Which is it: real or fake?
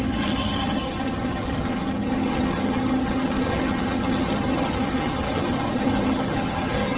fake